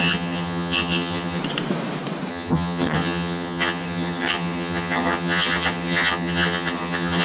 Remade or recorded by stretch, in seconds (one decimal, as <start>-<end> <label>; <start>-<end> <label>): 0.0-1.4 remade; 1.4-2.3 recorded; 2.3-7.2 remade